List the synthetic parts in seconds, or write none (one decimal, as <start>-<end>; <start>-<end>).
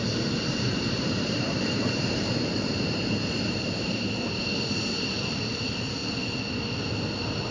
0.0-6.0